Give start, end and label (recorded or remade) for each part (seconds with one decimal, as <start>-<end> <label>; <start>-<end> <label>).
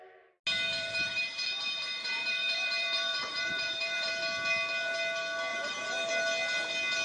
0.0-0.7 recorded; 0.7-4.1 remade; 4.1-5.5 recorded; 5.5-6.1 remade; 6.1-7.0 recorded